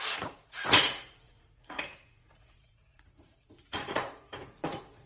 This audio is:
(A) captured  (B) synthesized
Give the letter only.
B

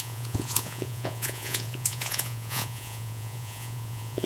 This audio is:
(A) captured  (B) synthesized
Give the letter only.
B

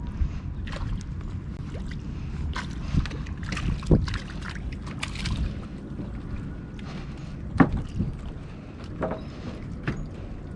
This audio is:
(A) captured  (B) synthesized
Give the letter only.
A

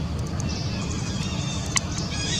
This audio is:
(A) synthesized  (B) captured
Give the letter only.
B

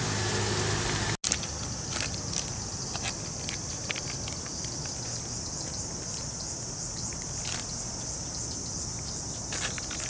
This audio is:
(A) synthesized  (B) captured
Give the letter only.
B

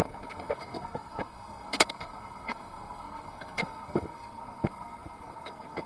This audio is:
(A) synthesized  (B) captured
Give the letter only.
A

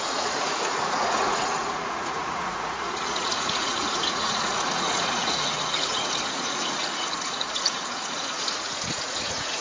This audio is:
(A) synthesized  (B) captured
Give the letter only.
A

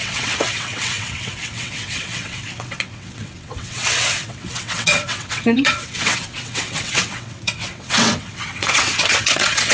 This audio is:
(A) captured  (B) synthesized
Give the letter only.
B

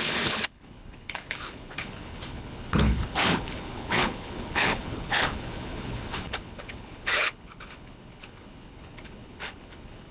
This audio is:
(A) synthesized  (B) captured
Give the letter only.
A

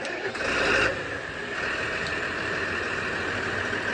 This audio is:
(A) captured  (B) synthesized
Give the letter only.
A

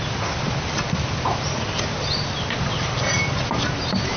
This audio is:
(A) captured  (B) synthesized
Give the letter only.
A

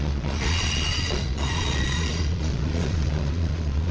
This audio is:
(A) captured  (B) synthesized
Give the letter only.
B